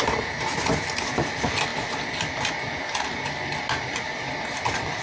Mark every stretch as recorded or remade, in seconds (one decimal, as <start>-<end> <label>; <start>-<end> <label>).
0.0-5.0 recorded